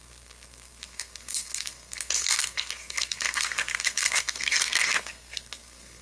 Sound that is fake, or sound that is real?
fake